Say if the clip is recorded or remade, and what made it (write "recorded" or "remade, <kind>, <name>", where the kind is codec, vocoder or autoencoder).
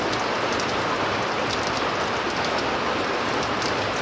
recorded